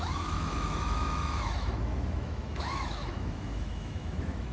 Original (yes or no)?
no